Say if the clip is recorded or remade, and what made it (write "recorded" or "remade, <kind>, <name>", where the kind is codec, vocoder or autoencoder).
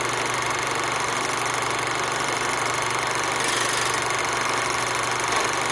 recorded